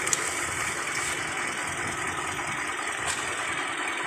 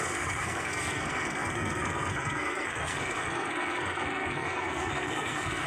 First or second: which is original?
first